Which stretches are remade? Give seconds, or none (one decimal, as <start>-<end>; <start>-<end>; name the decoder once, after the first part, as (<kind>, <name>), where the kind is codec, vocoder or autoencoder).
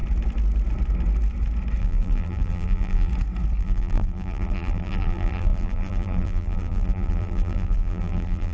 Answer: 1.8-3.1 (vocoder, BigVGAN v2); 3.6-8.5